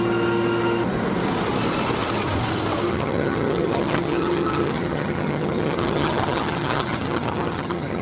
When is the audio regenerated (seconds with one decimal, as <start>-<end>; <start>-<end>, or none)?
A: 2.9-8.0

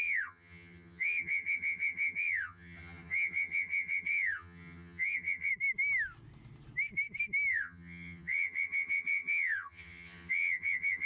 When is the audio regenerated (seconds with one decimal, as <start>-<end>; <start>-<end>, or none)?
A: 0.0-5.5; 7.5-11.1